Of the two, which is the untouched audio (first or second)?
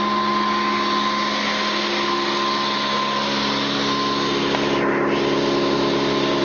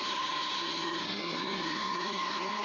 first